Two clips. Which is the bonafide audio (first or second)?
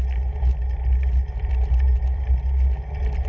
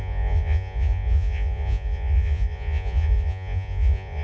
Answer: first